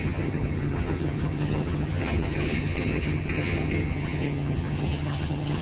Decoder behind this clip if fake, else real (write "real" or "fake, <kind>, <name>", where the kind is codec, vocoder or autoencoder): fake, vocoder, HiFi-GAN